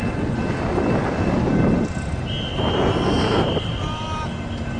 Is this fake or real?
real